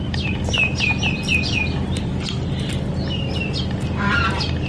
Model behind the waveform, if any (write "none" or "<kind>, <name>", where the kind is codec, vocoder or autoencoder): none